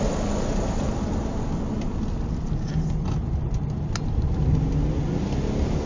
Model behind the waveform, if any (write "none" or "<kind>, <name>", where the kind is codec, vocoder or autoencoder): none